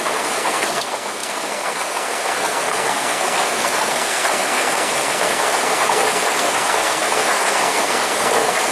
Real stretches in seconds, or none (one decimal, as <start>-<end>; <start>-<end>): none